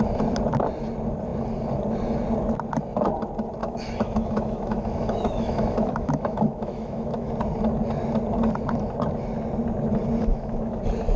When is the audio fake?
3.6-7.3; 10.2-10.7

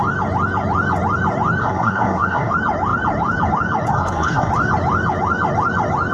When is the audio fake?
1.6-2.5; 3.9-4.5